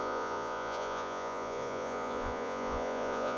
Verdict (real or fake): fake